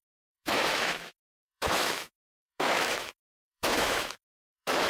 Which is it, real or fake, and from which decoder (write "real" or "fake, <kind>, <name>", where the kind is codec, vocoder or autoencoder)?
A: fake, autoencoder, DAC-VAE